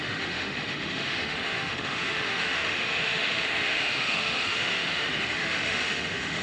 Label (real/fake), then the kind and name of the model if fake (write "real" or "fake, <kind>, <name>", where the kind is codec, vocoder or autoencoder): fake, autoencoder, DAC-VAE